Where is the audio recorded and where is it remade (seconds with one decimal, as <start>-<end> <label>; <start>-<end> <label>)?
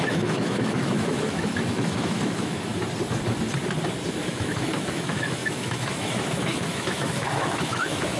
0.0-2.7 remade; 2.7-4.1 recorded; 4.1-8.2 remade